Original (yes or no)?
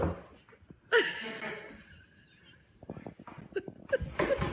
yes